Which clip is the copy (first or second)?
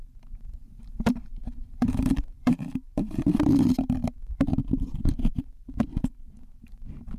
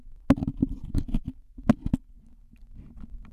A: first